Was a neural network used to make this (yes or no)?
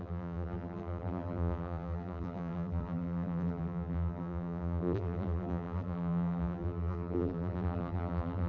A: yes